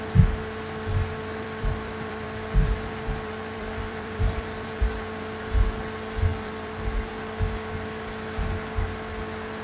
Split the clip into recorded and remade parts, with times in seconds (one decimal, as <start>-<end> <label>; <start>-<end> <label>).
0.0-0.9 recorded; 0.9-4.8 remade; 4.8-6.3 recorded; 6.3-7.1 remade; 7.1-9.6 recorded